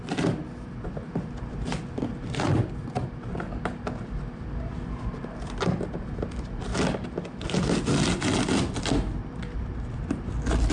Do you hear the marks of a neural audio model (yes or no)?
no